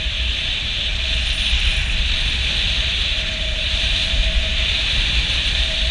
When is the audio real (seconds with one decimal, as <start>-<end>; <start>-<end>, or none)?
0.9-2.8

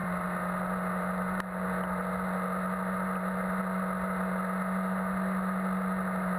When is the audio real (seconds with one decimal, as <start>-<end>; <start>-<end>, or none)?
0.0-6.4

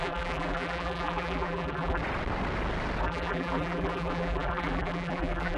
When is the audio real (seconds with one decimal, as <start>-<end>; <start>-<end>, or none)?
2.0-3.0

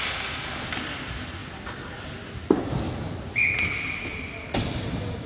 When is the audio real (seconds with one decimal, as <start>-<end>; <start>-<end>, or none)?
0.0-5.3